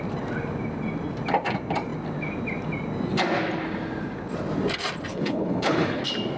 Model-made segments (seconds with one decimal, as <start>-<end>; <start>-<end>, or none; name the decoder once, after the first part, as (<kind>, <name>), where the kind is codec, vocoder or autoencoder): 5.1-6.0 (codec, HILCodec)